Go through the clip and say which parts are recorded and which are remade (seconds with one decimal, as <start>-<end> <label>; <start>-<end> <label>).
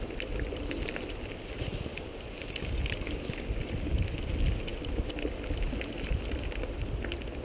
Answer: 0.0-7.4 recorded